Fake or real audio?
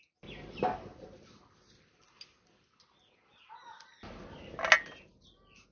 real